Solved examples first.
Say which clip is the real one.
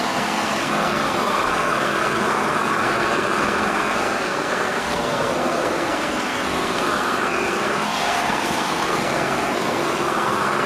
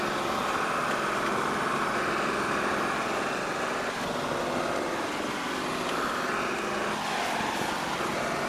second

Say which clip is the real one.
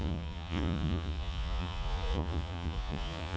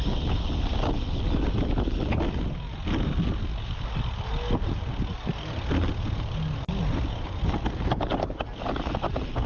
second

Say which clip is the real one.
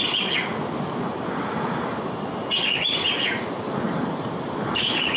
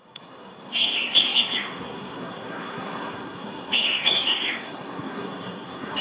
first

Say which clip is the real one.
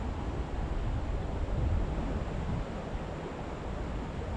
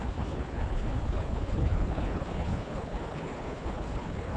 first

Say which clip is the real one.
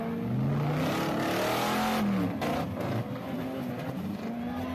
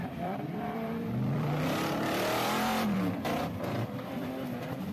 first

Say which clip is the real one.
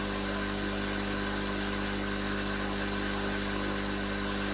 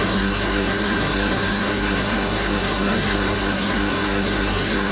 first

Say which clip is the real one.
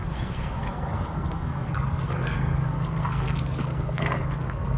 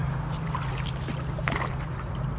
second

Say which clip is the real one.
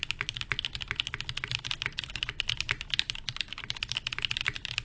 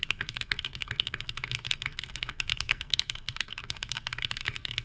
first